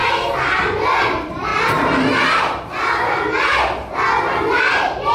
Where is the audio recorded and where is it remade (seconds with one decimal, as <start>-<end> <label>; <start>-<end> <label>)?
0.0-5.1 recorded